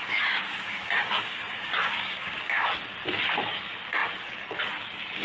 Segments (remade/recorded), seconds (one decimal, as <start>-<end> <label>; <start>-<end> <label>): 0.0-2.7 remade; 2.7-5.2 recorded